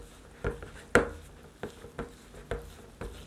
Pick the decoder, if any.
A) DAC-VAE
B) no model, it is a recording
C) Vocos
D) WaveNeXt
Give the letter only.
B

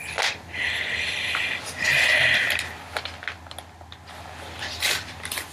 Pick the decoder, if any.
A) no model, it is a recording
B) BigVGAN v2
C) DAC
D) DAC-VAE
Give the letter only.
A